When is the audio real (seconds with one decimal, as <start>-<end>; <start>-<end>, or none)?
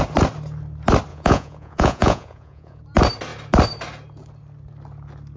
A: 0.0-1.1; 2.8-5.4